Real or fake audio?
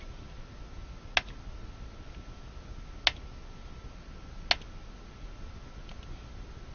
real